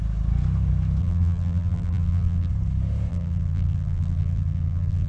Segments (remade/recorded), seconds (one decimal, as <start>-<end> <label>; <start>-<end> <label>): 0.0-1.0 recorded; 1.0-2.5 remade; 2.5-3.1 recorded; 3.1-5.1 remade